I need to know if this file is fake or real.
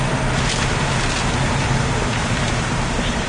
fake